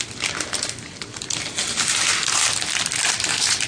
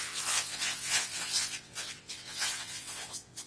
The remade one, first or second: second